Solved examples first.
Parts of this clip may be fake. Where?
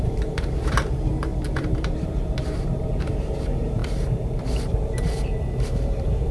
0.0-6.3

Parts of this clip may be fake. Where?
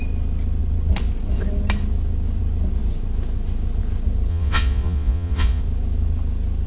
4.3-5.6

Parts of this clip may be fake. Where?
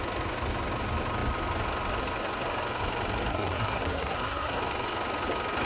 3.3-4.6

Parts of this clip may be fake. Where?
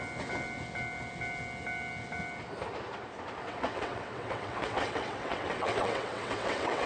3.4-6.9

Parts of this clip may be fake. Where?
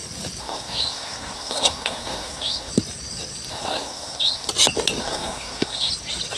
0.4-2.7; 3.5-4.5; 5.0-5.9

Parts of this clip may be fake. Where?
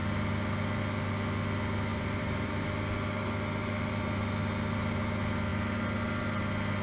1.9-2.7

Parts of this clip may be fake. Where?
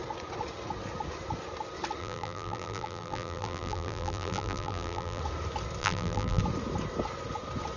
2.0-5.2; 5.8-6.4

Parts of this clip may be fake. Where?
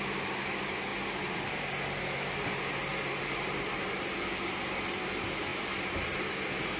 0.9-1.6; 2.9-4.0